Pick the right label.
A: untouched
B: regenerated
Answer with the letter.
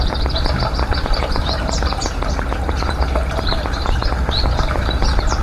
B